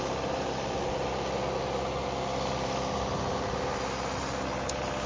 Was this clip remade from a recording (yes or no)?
no